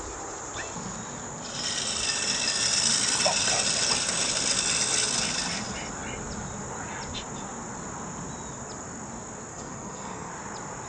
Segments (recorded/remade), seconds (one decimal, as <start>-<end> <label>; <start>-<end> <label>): 0.0-9.5 recorded; 9.5-10.3 remade; 10.3-10.9 recorded